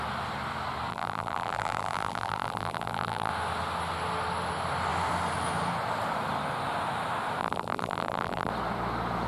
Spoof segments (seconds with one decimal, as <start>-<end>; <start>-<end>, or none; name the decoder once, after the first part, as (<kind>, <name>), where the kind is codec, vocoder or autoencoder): 0.9-3.3 (vocoder, BigVGAN v2); 7.4-8.5